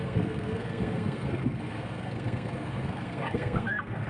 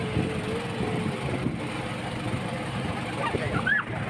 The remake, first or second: first